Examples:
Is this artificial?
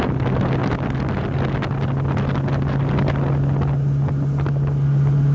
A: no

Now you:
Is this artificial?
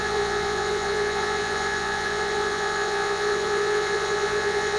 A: yes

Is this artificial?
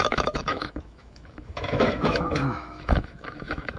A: yes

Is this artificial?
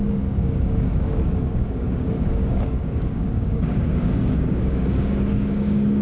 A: yes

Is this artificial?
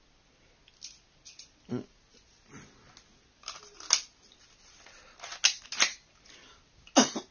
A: no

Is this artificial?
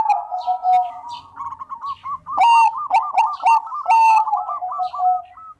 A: no